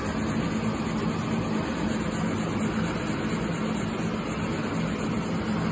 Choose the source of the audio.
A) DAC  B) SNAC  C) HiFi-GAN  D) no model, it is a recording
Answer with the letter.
D